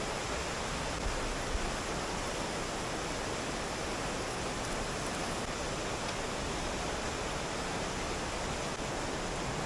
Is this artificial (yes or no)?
no